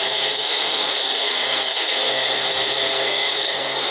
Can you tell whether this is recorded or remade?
remade